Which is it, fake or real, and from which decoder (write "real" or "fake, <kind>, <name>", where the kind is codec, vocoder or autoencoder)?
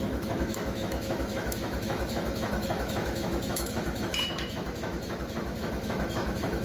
fake, autoencoder, DAC-VAE